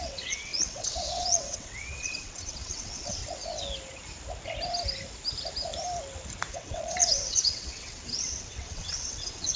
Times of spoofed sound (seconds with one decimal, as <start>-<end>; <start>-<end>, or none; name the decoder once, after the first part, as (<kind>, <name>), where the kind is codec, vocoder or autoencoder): 0.0-3.2 (vocoder, WaveNeXt); 6.5-9.6